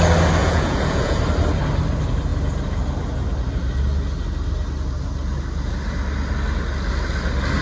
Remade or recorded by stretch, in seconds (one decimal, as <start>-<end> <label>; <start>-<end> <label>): 0.0-0.4 recorded; 0.4-1.2 remade; 1.2-7.6 recorded